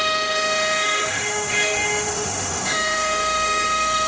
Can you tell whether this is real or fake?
fake